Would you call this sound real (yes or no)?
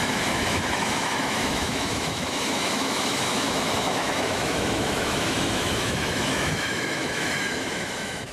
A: no